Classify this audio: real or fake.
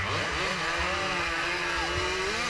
real